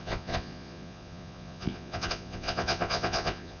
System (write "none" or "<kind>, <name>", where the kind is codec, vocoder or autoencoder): vocoder, Vocos